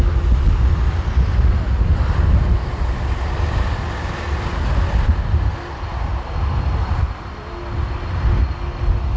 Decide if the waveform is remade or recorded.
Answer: recorded